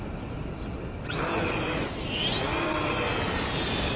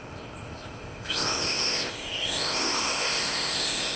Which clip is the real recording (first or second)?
first